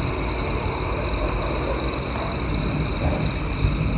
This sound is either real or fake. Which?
real